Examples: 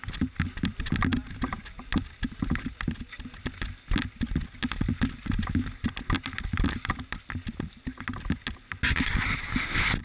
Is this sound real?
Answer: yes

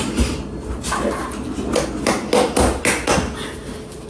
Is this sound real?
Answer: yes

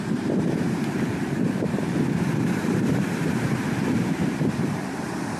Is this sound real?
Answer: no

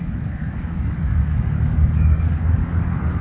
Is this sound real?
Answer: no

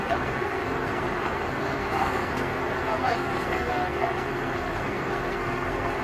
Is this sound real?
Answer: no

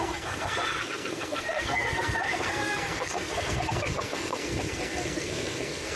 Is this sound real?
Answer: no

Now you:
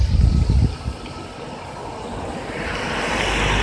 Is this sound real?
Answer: yes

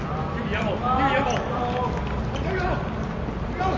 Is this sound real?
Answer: yes